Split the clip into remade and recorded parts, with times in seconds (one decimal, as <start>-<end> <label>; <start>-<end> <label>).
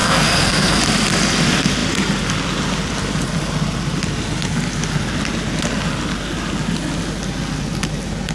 0.0-0.8 remade; 0.8-8.3 recorded